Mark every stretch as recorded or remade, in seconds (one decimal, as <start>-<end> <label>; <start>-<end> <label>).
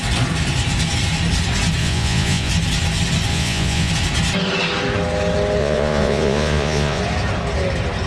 0.0-1.8 recorded; 1.8-2.5 remade; 2.5-3.3 recorded; 3.3-3.9 remade; 3.9-5.6 recorded; 5.6-7.0 remade; 7.0-8.1 recorded